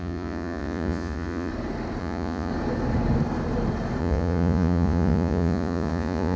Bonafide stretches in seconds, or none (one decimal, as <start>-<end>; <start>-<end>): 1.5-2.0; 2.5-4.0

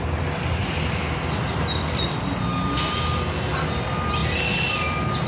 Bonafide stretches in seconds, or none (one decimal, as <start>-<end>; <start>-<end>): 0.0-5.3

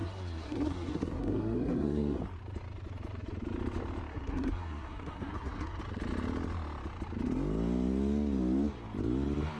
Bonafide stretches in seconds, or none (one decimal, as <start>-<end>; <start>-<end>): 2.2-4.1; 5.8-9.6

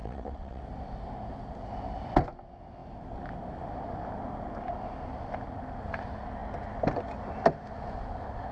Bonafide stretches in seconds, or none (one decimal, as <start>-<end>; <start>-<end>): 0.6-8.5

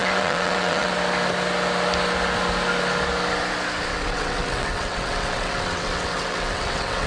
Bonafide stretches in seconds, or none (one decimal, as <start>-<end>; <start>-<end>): 0.9-3.9

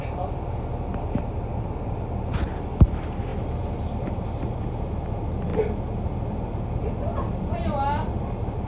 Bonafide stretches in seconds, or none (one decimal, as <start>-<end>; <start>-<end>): 0.0-8.7